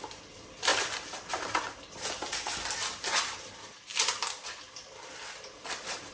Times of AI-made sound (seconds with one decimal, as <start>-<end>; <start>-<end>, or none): none